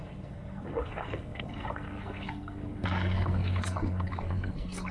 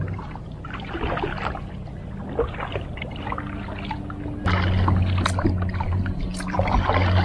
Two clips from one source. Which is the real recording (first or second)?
second